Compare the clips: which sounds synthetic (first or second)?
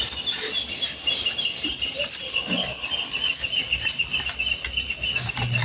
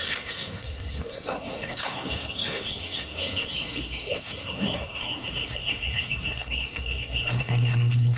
second